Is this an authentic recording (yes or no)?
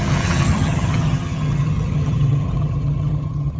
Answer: no